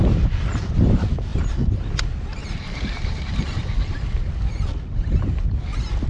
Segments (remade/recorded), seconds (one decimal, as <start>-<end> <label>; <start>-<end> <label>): 0.0-6.1 recorded